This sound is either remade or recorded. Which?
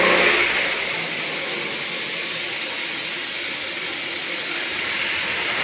recorded